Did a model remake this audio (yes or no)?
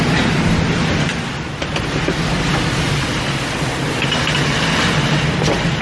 no